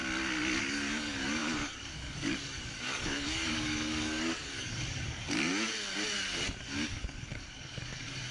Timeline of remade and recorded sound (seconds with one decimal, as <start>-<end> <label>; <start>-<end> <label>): 0.0-0.6 recorded; 0.6-5.5 remade; 5.5-6.9 recorded; 6.9-8.3 remade